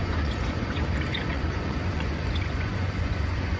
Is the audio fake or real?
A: fake